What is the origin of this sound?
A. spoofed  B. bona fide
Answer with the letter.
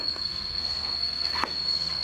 A